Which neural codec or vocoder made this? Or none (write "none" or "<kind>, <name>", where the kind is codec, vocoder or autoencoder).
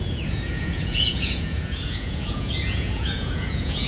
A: vocoder, Vocos